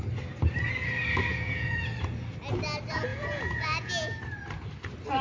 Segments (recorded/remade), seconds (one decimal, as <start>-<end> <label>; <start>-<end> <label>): 0.0-1.3 recorded; 1.3-1.9 remade; 1.9-3.1 recorded; 3.1-3.9 remade; 3.9-5.2 recorded